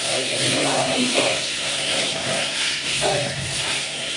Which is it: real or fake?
fake